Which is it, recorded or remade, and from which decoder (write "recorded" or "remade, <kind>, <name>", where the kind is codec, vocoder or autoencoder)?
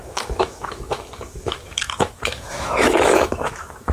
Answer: remade, autoencoder, DAC-VAE